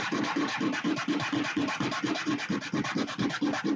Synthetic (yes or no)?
no